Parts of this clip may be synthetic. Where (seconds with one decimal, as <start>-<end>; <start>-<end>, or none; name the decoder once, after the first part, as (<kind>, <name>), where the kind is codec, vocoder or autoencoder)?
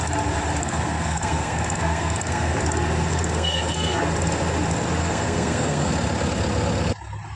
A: 0.6-2.6 (codec, SNAC); 3.1-4.0; 5.0-5.9